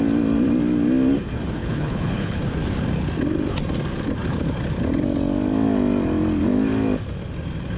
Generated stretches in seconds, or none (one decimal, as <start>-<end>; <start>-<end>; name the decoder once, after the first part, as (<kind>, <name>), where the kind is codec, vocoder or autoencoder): 1.6-2.4 (codec, HILCodec)